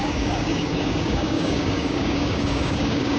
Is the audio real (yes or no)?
no